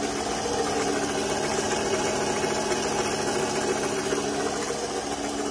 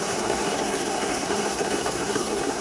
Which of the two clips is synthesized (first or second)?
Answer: second